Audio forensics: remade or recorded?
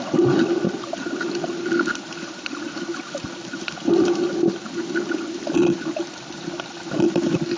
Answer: recorded